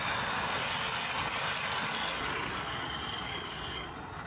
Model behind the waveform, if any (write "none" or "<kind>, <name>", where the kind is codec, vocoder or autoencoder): none